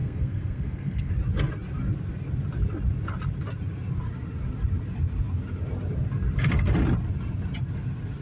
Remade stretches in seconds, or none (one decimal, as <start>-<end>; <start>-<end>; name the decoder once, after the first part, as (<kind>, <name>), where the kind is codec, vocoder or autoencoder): 0.0-1.1 (codec, SNAC)